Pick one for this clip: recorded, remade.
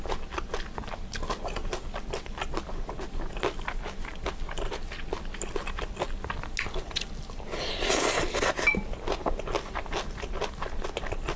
recorded